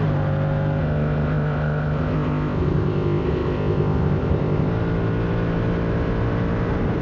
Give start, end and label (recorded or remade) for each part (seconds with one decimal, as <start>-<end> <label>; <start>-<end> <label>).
0.0-0.8 recorded; 0.8-4.7 remade; 4.7-7.0 recorded